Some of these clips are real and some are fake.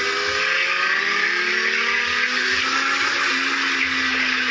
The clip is real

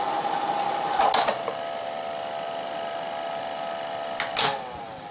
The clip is real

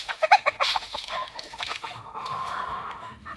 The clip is fake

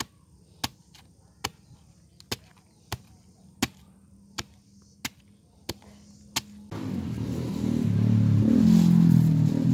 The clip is real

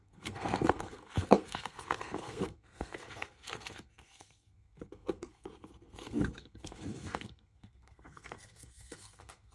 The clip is fake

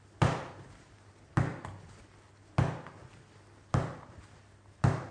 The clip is real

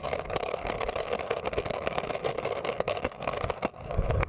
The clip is fake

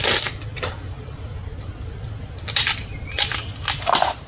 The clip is real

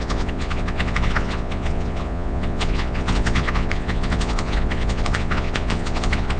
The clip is fake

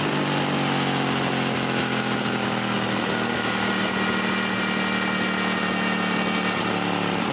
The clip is real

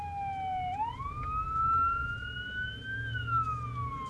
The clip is real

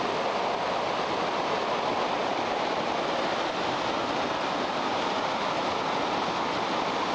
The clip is real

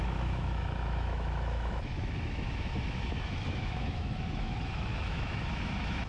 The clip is fake